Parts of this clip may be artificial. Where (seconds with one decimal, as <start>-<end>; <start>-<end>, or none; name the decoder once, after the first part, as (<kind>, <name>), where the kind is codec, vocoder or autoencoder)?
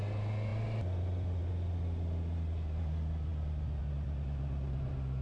none